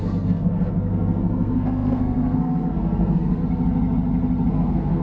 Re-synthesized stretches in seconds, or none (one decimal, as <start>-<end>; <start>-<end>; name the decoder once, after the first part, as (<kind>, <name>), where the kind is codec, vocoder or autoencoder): 0.0-3.4 (codec, SNAC); 4.5-5.0